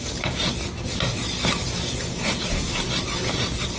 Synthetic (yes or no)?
no